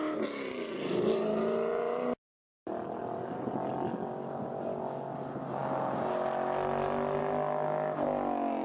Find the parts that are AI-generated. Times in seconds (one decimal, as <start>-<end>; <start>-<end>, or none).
none